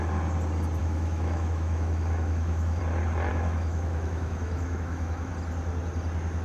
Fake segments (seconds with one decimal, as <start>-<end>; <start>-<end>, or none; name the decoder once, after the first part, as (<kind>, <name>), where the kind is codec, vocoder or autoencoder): 0.8-2.8 (autoencoder, DAC-VAE); 3.3-5.3